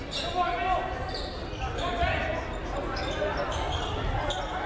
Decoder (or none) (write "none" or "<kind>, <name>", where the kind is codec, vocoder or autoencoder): none